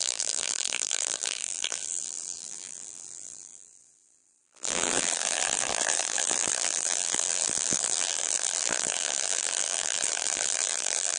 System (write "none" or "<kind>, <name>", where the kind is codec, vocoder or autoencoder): vocoder, BigVGAN v2